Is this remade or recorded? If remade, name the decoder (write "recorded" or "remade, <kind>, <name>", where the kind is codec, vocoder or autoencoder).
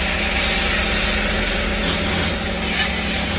recorded